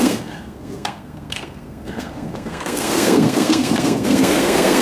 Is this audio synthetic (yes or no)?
yes